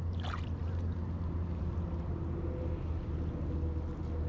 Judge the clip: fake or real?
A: real